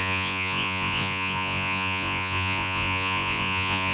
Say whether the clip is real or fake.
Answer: fake